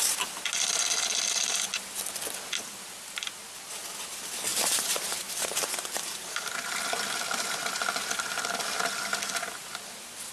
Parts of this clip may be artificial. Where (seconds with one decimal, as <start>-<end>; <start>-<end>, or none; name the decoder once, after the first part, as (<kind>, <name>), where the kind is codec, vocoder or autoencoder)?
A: 4.5-6.5 (vocoder, BigVGAN v2)